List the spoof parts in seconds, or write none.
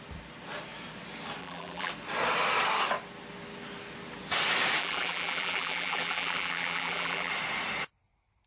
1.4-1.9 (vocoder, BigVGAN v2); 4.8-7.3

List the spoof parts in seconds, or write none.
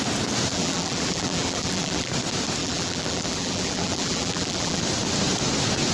0.5-2.1 (vocoder, BigVGAN v2); 2.6-4.8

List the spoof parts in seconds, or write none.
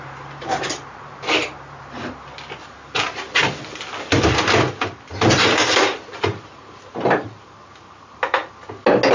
0.0-1.4 (vocoder, BigVGAN v2); 5.1-8.4